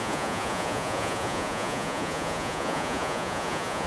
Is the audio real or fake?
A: fake